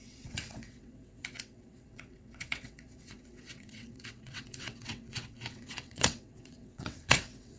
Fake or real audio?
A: fake